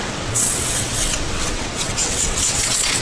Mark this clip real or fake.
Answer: fake